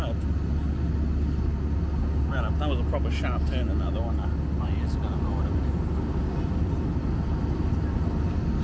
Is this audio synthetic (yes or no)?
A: no